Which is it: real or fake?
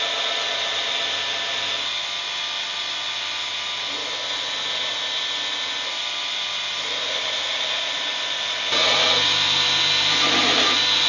real